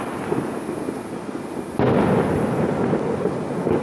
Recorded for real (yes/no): yes